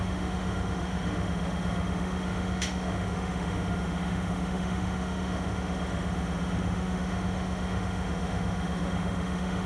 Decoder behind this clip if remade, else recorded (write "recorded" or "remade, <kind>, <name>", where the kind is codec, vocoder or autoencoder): remade, autoencoder, DAC-VAE